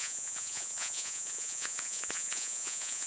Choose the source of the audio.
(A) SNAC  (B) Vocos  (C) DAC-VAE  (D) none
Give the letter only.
B